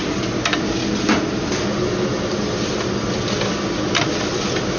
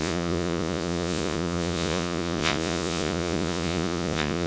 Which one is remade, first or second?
second